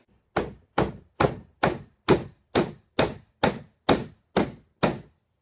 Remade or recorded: recorded